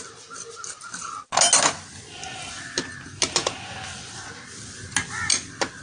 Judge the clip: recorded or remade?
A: recorded